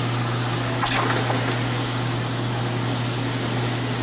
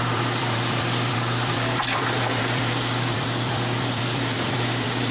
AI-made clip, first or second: second